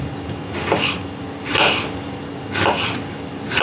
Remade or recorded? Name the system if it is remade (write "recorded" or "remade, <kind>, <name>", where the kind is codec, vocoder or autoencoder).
recorded